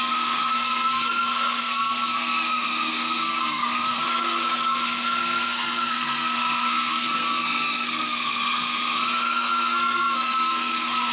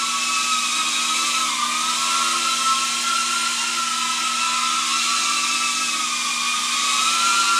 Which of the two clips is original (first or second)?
second